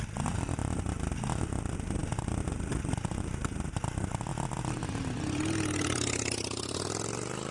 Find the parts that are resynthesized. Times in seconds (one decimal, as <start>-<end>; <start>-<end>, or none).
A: none

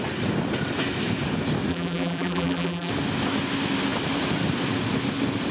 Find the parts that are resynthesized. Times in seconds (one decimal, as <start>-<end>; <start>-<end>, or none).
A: 1.7-2.9

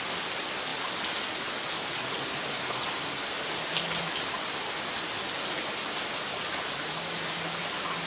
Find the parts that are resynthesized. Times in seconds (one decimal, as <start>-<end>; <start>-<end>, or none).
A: none